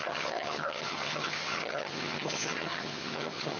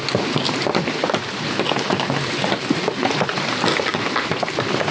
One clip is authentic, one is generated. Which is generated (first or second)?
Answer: first